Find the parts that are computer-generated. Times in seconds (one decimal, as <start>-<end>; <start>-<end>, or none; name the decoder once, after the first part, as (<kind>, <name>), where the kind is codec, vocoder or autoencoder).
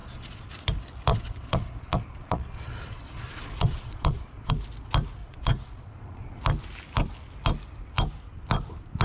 0.0-0.5 (vocoder, Vocos); 1.1-4.5; 5.2-6.4